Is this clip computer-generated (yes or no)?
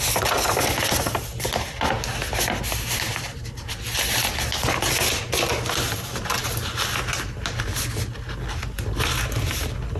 no